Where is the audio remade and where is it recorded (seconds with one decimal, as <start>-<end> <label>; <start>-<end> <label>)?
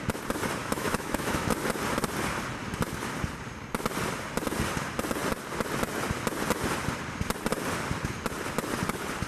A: 0.0-0.6 recorded; 0.6-1.5 remade; 1.5-9.3 recorded